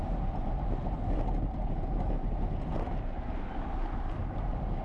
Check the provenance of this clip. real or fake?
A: real